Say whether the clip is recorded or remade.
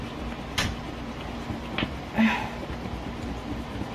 recorded